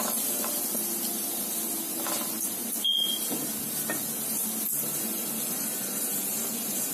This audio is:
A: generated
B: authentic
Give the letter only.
B